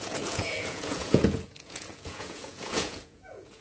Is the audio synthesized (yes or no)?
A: yes